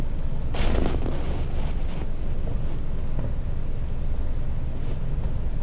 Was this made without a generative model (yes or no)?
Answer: yes